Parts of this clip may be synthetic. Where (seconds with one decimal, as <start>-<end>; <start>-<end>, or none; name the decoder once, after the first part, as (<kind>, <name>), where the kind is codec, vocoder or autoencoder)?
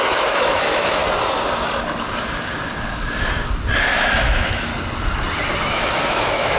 0.0-1.0 (autoencoder, DAC-VAE); 3.8-4.7; 5.7-6.6